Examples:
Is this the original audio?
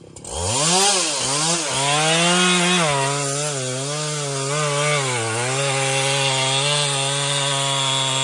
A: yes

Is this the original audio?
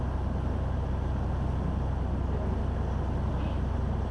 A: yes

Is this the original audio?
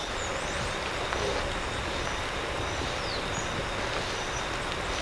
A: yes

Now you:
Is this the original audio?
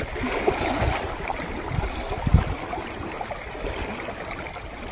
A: yes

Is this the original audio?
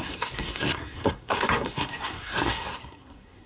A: no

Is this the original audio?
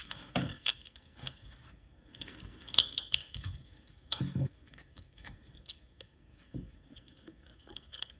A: no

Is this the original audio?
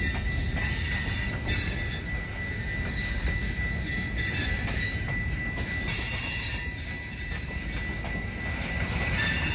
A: yes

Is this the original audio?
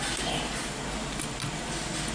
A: yes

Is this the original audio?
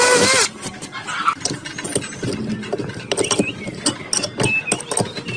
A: yes